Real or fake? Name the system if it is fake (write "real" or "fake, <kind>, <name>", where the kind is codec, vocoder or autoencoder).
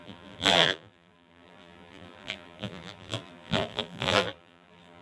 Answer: fake, vocoder, BigVGAN v2